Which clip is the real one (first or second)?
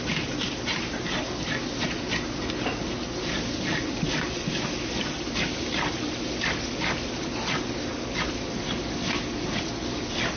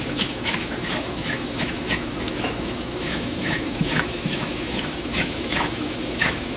first